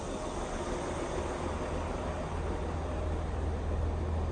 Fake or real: real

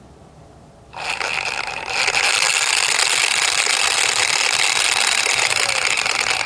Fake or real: real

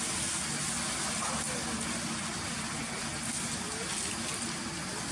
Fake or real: real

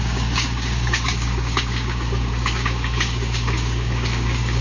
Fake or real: fake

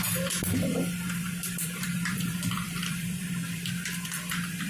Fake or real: fake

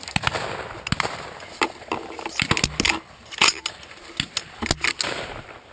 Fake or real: real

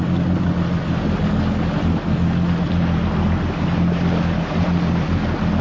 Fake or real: real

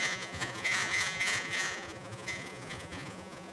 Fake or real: fake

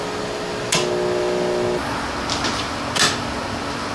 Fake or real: real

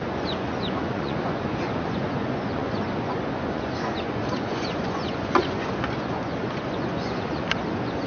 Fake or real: fake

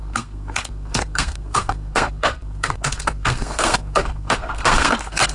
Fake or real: fake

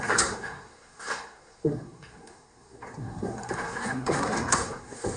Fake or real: fake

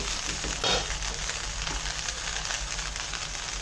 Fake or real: real